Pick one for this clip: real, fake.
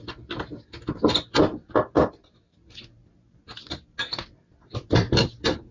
real